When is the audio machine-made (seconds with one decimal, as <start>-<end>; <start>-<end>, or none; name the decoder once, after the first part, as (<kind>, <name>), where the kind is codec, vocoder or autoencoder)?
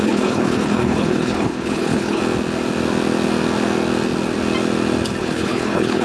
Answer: 0.0-2.2 (codec, HILCodec); 5.2-6.0